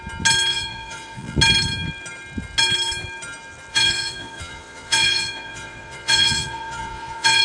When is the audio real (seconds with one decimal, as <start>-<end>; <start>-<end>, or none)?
0.0-0.5; 1.4-3.7